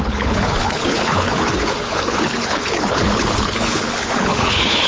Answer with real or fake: fake